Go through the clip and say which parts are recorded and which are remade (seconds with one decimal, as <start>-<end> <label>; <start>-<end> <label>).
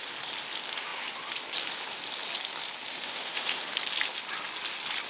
0.0-2.9 recorded; 2.9-3.6 remade; 3.6-5.1 recorded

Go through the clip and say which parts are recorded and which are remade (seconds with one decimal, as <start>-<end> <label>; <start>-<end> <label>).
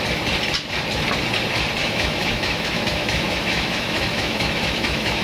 0.0-1.8 recorded; 1.8-5.2 remade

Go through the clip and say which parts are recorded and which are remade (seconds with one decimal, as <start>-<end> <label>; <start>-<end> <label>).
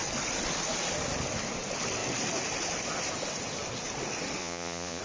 0.0-4.4 recorded; 4.4-5.0 remade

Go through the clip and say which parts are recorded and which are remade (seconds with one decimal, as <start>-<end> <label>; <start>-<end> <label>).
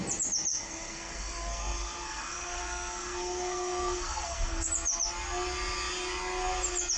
0.0-0.5 recorded; 0.5-4.7 remade; 4.7-7.0 recorded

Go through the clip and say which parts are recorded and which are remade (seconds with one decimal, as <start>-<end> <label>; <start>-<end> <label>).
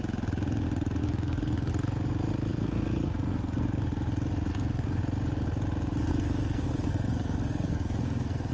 0.0-1.0 recorded; 1.0-1.7 remade; 1.7-2.5 recorded; 2.5-3.8 remade; 3.8-4.5 recorded; 4.5-5.0 remade; 5.0-6.1 recorded; 6.1-8.5 remade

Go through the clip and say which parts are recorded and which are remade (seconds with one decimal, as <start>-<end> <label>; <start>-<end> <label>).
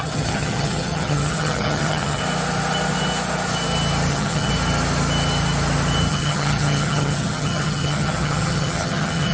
0.0-2.2 remade; 2.2-4.1 recorded; 4.1-4.5 remade; 4.5-6.1 recorded; 6.1-9.3 remade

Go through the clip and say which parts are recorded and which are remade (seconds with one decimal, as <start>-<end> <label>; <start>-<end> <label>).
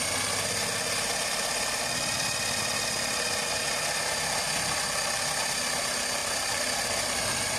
0.0-6.2 recorded; 6.2-7.6 remade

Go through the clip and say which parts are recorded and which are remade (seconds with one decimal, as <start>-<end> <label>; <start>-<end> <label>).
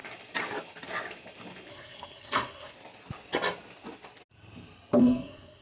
0.0-1.7 recorded; 1.7-2.7 remade; 2.7-5.0 recorded; 5.0-5.6 remade